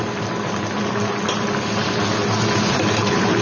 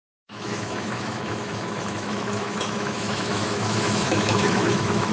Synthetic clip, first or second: second